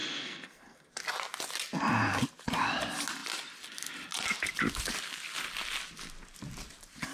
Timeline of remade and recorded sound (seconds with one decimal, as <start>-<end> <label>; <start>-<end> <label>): 0.0-0.9 remade; 0.9-7.1 recorded